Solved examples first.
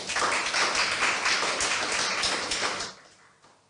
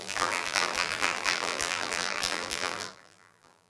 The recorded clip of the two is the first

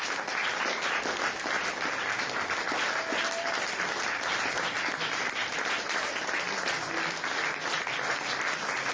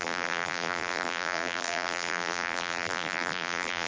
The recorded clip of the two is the first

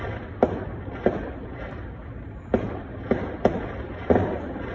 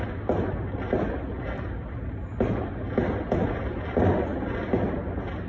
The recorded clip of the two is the second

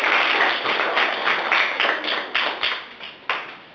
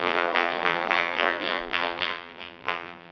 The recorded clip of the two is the first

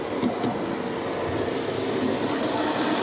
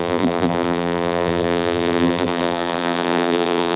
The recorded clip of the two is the first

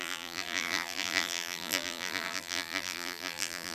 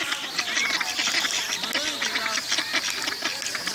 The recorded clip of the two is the second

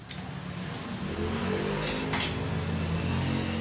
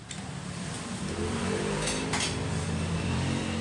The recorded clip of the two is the first